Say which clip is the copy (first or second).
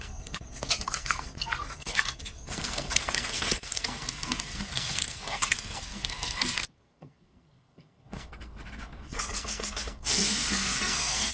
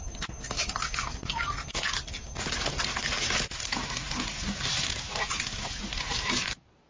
first